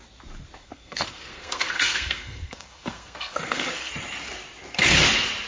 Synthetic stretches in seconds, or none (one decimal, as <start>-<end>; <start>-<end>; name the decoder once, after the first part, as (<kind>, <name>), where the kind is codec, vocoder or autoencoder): 0.6-3.9 (codec, SNAC)